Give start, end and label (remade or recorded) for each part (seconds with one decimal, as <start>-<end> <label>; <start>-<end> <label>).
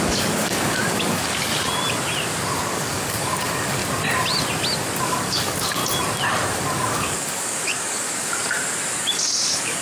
0.0-1.5 remade; 1.5-2.6 recorded; 2.6-3.8 remade; 3.8-5.0 recorded; 5.0-5.8 remade; 5.8-6.5 recorded; 6.5-8.3 remade; 8.3-9.0 recorded; 9.0-9.8 remade